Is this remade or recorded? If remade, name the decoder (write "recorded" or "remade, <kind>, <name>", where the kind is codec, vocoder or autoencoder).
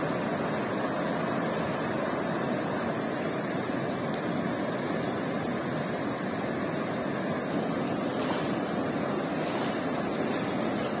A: recorded